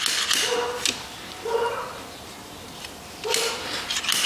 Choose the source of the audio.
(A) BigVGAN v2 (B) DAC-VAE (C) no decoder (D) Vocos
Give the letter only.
C